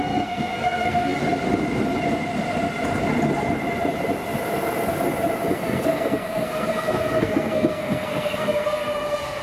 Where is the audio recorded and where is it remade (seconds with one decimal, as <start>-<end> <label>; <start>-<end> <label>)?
0.0-1.2 remade; 1.2-5.5 recorded; 5.5-9.4 remade